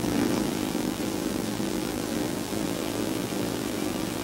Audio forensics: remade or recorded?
remade